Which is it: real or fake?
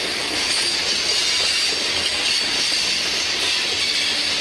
real